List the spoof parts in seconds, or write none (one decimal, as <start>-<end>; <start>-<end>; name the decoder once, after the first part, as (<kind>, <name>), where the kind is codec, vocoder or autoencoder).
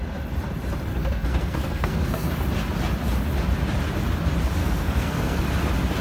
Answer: 0.9-2.3 (codec, SNAC); 4.6-5.4